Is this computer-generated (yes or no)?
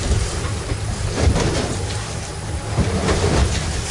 no